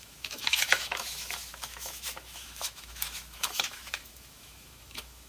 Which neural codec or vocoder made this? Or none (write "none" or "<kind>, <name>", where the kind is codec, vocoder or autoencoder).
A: autoencoder, DAC-VAE